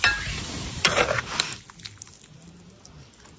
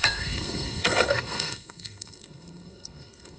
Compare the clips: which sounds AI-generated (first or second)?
second